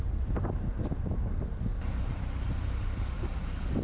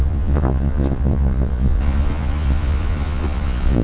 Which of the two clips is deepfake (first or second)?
second